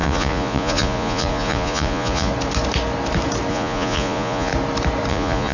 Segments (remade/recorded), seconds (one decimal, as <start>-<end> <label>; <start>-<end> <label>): 0.0-2.3 remade; 2.3-3.5 recorded; 3.5-4.5 remade; 4.5-5.1 recorded; 5.1-5.5 remade